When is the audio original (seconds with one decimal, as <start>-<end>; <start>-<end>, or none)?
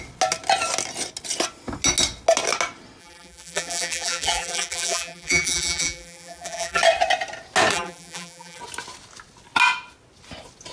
0.0-3.0; 6.8-7.7; 8.6-10.7